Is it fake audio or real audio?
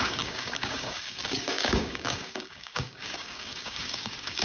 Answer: fake